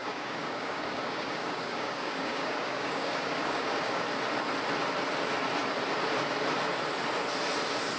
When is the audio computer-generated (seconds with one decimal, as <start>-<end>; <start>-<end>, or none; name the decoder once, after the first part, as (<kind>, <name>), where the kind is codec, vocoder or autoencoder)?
0.0-4.0 (codec, DAC)